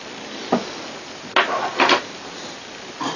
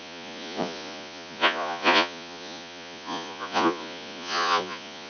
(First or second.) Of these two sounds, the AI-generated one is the second